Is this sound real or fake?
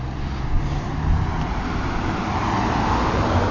real